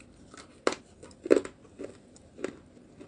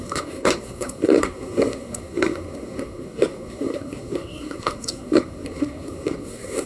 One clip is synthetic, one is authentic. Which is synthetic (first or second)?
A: second